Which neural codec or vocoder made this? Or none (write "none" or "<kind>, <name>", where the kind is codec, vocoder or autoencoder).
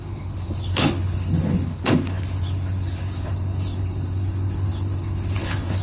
codec, HILCodec